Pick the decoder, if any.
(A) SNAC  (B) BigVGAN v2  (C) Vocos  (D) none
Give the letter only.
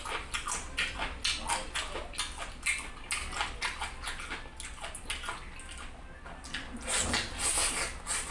D